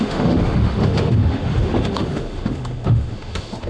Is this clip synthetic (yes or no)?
yes